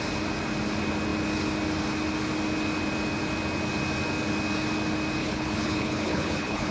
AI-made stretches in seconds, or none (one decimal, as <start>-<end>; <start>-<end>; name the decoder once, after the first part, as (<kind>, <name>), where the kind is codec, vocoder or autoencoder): 5.2-6.7 (codec, HILCodec)